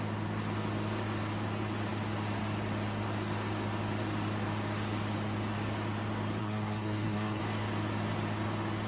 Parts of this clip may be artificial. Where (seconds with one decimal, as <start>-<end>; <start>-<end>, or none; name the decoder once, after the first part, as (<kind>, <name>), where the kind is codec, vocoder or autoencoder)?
6.4-7.4 (codec, SNAC)